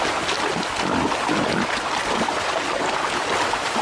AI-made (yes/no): no